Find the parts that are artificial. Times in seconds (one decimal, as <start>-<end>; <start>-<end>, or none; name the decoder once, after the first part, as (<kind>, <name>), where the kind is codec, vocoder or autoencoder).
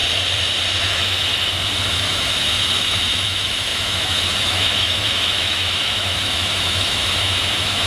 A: 0.8-1.3 (autoencoder, DAC-VAE); 1.9-7.9